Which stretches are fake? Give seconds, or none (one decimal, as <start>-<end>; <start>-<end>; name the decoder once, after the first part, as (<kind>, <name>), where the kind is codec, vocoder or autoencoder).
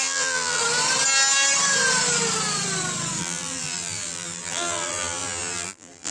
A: 0.0-0.6 (vocoder, BigVGAN v2); 3.2-6.1